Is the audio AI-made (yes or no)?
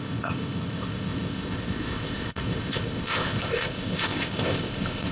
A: yes